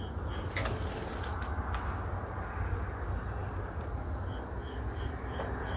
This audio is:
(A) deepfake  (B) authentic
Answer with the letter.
B